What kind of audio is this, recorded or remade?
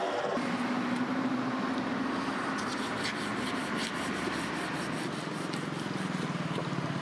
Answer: recorded